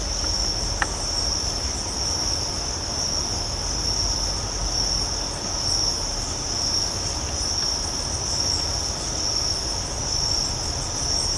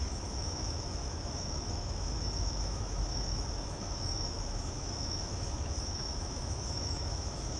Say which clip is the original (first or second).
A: first